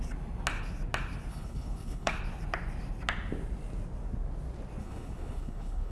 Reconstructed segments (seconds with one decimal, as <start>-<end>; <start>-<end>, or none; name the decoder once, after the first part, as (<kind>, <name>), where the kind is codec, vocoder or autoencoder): 1.3-2.1 (codec, HILCodec); 4.8-5.9